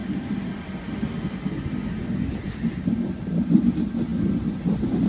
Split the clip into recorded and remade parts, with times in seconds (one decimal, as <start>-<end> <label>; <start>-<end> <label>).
0.0-5.1 recorded